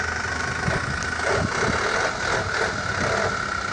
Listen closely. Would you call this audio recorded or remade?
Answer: recorded